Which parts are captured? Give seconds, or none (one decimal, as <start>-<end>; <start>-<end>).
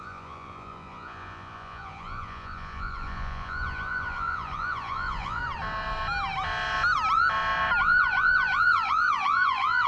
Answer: 5.4-7.8